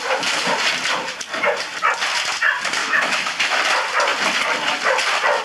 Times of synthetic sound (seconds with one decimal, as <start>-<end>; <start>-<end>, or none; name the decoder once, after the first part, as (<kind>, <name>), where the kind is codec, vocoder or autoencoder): 2.8-3.6 (autoencoder, DAC-VAE)